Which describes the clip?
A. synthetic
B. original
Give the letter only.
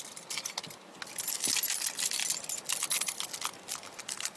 B